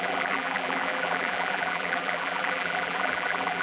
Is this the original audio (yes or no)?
no